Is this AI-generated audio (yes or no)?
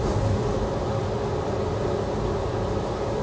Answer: no